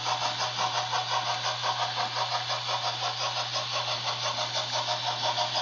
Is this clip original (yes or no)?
yes